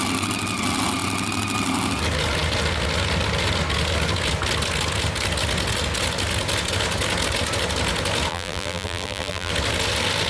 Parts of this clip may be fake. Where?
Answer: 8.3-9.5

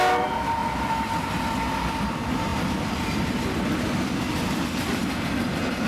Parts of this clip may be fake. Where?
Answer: none

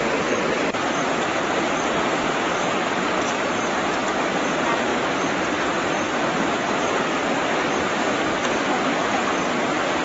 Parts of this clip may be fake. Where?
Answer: none

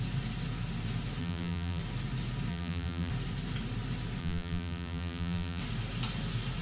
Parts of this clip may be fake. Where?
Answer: 1.2-1.8; 2.5-3.1; 4.2-5.6

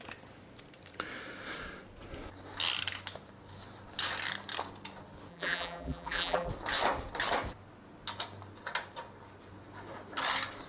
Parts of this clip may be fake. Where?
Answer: 5.3-6.5